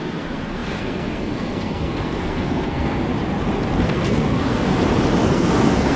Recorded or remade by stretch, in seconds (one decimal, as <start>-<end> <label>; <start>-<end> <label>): 0.0-3.1 remade; 3.1-3.8 recorded; 3.8-4.7 remade; 4.7-5.2 recorded; 5.2-6.0 remade